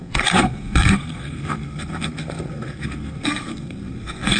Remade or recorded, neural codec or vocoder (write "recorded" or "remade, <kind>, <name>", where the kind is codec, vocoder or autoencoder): remade, codec, SNAC